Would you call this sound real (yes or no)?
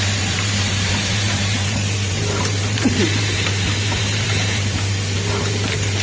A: no